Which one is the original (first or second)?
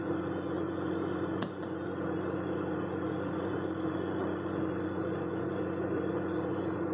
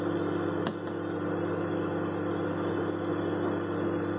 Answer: second